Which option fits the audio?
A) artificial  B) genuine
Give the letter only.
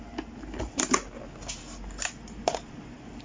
B